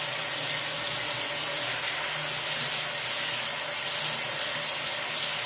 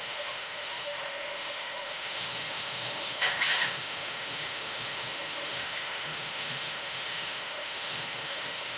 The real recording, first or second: first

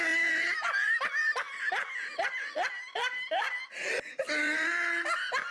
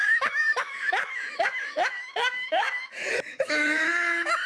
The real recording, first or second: first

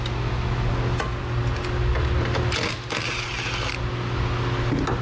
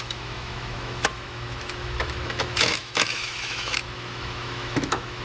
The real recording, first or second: first